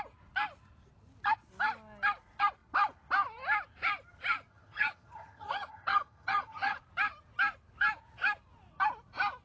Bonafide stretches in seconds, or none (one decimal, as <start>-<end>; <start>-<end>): 0.0-4.5; 6.8-9.4